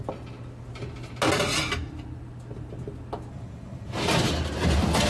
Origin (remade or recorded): recorded